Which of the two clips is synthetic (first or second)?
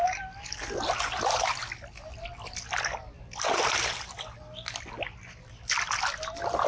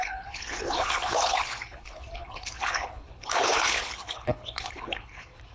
second